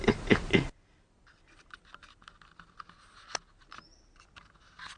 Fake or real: real